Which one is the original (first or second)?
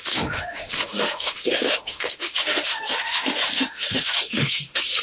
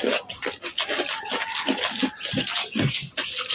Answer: second